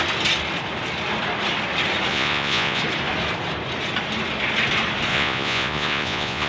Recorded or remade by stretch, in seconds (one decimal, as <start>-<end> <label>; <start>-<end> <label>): 0.0-2.1 recorded; 2.1-2.8 remade; 2.8-5.1 recorded; 5.1-6.5 remade